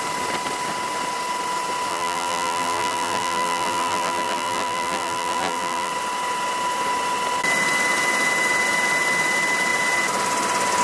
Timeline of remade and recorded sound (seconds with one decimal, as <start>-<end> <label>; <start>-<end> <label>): 0.0-1.9 recorded; 1.9-5.9 remade; 5.9-10.8 recorded